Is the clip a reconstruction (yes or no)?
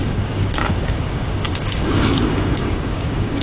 yes